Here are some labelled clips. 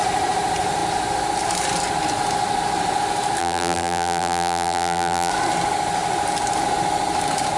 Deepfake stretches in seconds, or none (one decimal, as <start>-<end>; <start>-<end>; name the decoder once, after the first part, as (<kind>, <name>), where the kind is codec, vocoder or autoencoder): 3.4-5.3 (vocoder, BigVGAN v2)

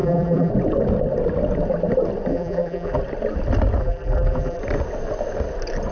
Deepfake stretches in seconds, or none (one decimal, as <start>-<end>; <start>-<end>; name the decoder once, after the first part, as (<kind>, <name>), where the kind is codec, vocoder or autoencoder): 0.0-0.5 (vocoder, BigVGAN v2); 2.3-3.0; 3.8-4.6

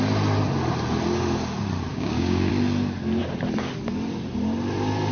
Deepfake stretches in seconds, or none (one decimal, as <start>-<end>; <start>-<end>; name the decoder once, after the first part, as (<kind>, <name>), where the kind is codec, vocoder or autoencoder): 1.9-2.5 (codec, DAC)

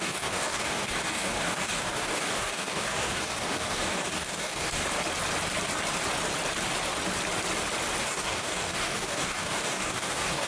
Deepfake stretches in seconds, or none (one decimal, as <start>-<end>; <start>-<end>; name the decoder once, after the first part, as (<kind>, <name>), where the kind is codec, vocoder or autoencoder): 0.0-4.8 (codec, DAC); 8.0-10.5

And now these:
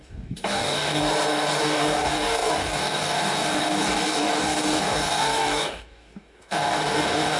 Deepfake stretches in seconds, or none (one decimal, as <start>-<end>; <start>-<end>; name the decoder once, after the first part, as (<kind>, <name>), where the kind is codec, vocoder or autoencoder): 0.0-1.0 (codec, DAC); 1.6-7.4

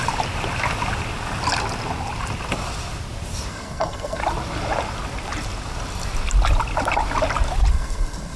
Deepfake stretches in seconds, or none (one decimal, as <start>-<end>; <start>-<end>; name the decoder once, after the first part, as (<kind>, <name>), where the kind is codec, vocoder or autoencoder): 3.5-4.2 (codec, SNAC); 7.7-8.4

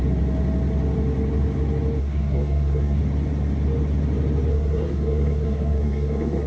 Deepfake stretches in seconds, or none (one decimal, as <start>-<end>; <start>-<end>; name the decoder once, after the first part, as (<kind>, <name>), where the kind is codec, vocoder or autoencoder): 2.0-3.0 (codec, SNAC); 4.5-6.5

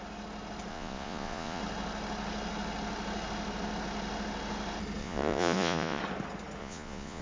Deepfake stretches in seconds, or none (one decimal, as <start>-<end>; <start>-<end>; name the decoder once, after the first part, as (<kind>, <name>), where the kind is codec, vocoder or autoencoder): 0.7-1.6 (vocoder, Vocos); 5.0-6.0; 6.6-7.2